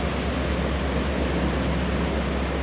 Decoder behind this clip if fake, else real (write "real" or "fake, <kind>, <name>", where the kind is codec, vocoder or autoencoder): real